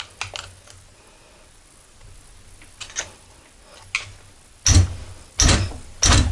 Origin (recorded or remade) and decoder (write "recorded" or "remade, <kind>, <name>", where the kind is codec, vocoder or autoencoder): recorded